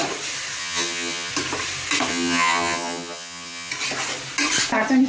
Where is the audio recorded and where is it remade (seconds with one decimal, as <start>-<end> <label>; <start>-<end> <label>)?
0.0-0.6 recorded; 0.6-1.3 remade; 1.3-2.1 recorded; 2.1-3.7 remade; 3.7-5.1 recorded